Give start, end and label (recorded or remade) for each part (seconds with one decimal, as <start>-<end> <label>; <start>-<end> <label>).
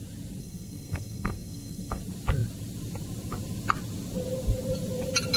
0.0-0.4 recorded; 0.4-2.0 remade; 2.0-5.4 recorded